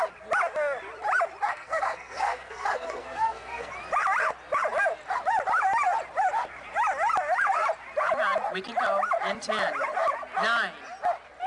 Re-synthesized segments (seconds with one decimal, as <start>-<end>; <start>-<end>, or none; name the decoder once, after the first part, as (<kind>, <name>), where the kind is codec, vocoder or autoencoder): 1.5-3.7 (codec, SNAC)